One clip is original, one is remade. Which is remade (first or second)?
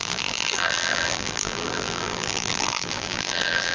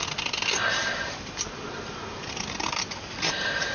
first